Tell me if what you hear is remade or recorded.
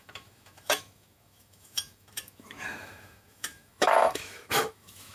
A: remade